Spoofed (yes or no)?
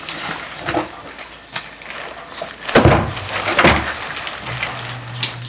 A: no